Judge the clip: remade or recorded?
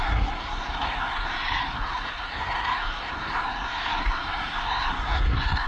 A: remade